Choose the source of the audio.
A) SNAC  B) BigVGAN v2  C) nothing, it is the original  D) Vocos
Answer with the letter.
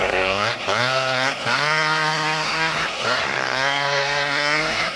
A